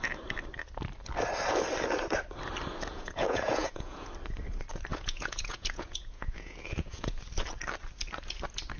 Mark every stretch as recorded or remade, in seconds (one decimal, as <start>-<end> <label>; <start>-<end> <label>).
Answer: 0.0-2.9 recorded; 2.9-4.1 remade; 4.1-4.9 recorded; 4.9-7.2 remade; 7.2-8.8 recorded